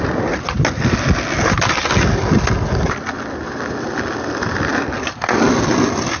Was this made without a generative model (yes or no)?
yes